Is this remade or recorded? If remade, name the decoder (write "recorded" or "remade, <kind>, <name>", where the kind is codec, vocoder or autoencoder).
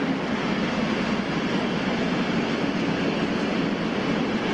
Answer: recorded